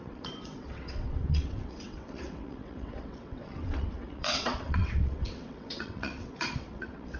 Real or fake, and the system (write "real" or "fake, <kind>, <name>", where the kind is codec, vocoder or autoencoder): fake, vocoder, WaveNeXt